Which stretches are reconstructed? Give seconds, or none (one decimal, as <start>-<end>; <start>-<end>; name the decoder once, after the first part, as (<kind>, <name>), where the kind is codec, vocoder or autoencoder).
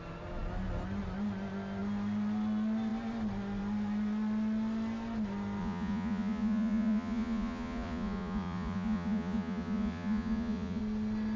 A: 5.6-10.8 (vocoder, Vocos)